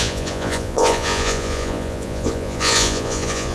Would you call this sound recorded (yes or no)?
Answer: no